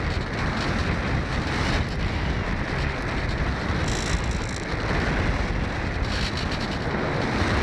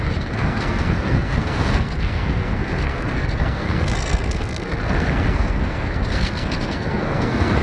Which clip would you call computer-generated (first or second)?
second